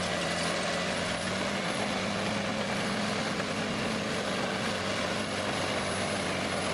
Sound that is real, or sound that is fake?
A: real